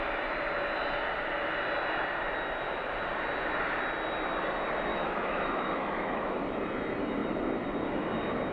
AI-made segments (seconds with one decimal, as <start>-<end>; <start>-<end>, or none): 4.9-6.4